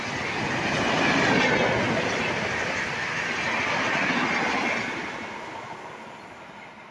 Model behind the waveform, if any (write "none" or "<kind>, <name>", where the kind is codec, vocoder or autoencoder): none